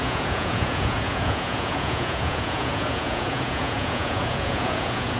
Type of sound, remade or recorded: remade